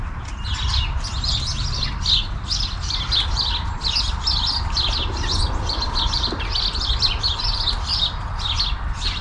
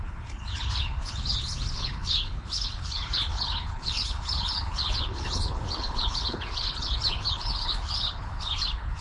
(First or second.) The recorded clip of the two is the first